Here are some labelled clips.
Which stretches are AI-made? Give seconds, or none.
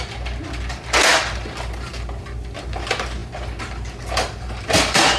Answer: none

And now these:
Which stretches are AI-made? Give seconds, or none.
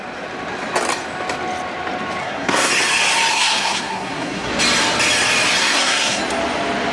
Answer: 2.2-2.7 (codec, SNAC); 3.3-4.5; 5.6-6.2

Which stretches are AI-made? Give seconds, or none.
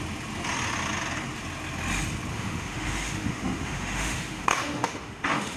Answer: 2.3-5.6 (autoencoder, DAC-VAE)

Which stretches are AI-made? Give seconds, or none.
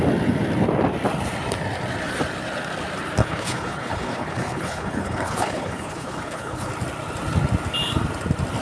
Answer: 3.2-6.7 (codec, HILCodec)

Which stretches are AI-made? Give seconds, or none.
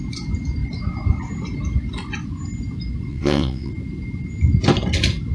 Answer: 3.1-3.7 (vocoder, WaveNeXt)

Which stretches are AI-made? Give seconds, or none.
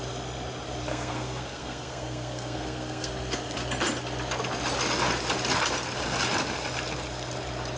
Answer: 0.9-3.1 (codec, SNAC)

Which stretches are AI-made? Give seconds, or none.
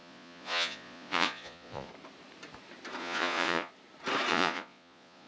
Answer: 0.0-1.9 (vocoder, Vocos); 3.0-3.7; 4.3-5.3